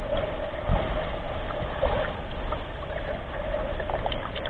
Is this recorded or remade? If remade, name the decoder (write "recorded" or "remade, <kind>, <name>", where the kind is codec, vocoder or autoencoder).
recorded